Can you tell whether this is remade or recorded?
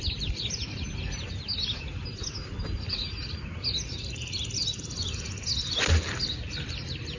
recorded